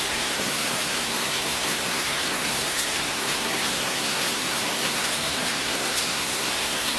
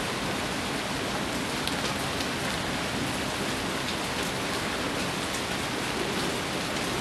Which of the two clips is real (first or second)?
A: second